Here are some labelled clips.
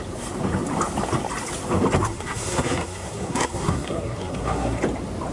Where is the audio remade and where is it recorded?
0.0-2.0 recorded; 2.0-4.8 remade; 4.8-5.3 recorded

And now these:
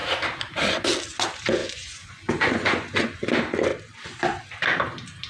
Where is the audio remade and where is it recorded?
0.0-1.6 recorded; 1.6-3.3 remade; 3.3-5.3 recorded